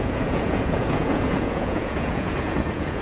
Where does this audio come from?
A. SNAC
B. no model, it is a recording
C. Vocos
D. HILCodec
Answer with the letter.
C